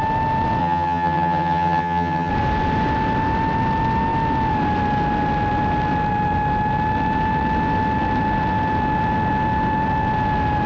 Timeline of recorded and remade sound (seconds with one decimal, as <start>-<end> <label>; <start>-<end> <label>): 0.0-0.6 recorded; 0.6-2.3 remade; 2.3-10.7 recorded